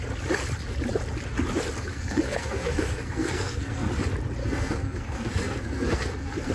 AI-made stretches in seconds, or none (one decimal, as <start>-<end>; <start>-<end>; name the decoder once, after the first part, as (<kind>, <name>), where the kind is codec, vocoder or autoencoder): 1.9-3.9 (codec, SNAC); 4.4-6.5